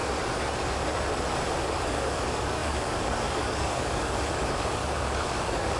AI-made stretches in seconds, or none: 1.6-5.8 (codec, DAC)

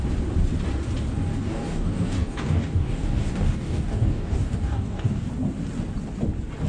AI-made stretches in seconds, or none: 1.3-5.3 (codec, DAC)

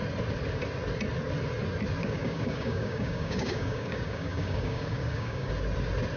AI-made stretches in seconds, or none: 2.0-5.5 (codec, DAC)

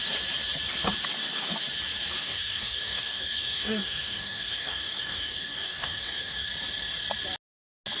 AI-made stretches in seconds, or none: 2.2-6.5 (codec, DAC)